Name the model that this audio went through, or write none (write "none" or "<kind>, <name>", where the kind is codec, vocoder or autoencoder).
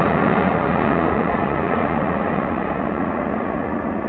vocoder, Vocos